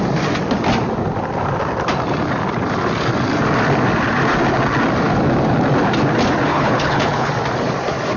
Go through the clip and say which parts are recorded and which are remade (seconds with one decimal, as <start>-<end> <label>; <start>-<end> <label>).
0.0-6.5 recorded; 6.5-7.3 remade; 7.3-8.2 recorded